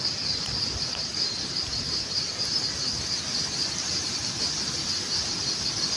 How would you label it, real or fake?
real